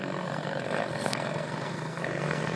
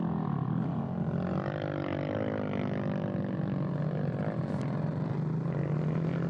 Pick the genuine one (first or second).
second